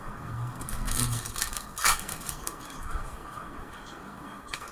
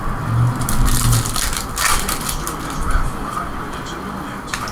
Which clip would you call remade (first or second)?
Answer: first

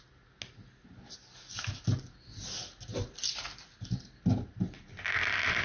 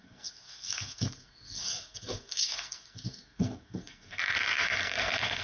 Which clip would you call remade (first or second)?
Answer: second